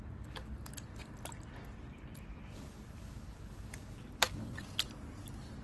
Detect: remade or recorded recorded